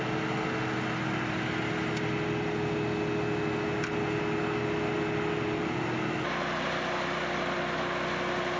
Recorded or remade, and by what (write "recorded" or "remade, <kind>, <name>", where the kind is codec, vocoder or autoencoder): recorded